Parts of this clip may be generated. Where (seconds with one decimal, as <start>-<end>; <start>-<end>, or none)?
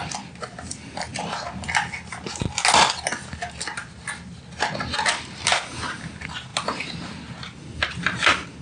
none